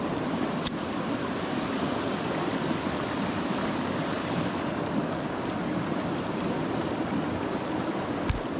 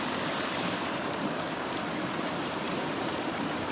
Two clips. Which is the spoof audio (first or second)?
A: second